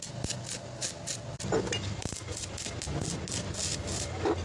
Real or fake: real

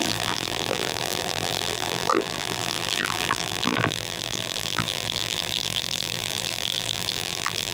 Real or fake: fake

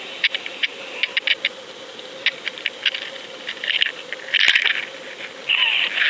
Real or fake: real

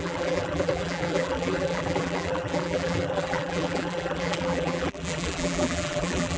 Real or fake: fake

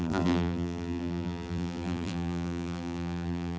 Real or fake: fake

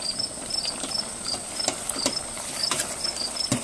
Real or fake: real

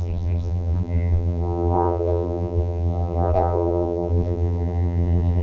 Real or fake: fake